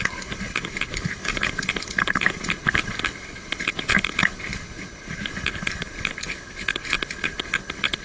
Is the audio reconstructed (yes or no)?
yes